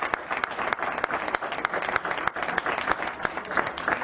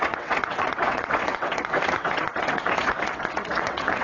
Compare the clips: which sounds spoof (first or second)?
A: second